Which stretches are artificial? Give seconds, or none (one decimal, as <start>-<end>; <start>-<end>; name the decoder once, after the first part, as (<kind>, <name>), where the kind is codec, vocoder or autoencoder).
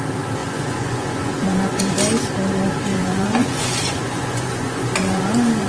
0.4-1.8 (vocoder, Vocos); 2.9-5.2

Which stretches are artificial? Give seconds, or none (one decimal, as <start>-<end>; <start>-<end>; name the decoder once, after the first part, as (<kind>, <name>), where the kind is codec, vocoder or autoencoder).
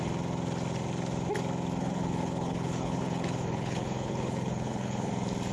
1.8-5.1 (codec, HILCodec)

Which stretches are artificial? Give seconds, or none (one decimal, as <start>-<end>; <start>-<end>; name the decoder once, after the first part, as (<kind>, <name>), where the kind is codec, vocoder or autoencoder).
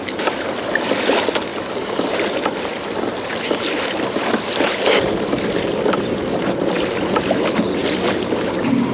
none